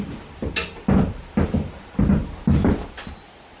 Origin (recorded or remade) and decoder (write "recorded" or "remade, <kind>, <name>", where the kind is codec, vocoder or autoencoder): recorded